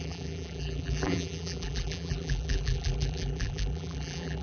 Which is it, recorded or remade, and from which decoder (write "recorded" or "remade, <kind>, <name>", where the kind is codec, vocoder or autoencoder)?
remade, vocoder, BigVGAN v2